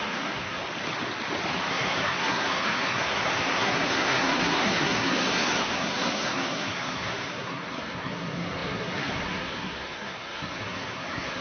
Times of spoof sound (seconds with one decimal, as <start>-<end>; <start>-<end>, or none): 0.0-0.6; 1.7-11.4